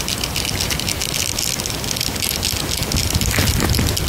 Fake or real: real